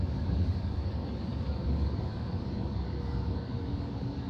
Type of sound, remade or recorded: remade